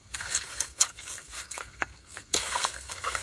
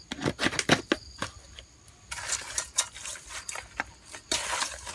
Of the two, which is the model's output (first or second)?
first